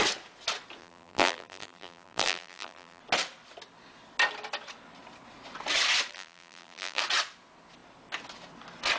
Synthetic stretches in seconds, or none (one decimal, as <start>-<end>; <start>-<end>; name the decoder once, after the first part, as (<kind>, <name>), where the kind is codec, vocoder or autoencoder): 0.8-3.0 (vocoder, BigVGAN v2); 6.1-7.0